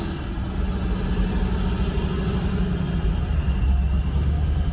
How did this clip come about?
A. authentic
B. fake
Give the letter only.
A